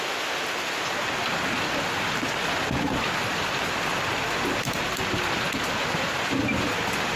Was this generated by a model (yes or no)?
no